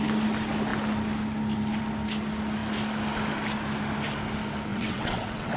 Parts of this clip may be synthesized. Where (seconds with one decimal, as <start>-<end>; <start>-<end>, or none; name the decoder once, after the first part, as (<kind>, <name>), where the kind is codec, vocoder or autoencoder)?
4.7-5.6 (vocoder, WaveNeXt)